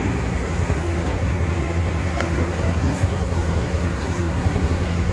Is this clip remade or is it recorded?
remade